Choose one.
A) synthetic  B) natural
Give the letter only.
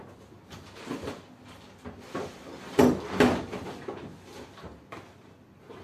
B